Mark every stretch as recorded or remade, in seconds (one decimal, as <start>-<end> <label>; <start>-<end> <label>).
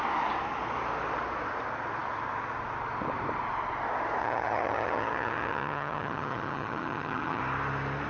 0.0-4.2 recorded; 4.2-7.4 remade; 7.4-8.1 recorded